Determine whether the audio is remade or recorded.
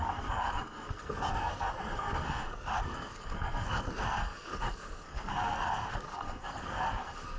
remade